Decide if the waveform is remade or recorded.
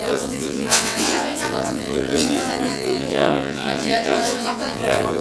remade